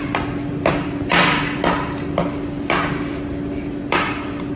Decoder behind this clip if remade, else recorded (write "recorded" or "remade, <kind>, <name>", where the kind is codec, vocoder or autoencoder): recorded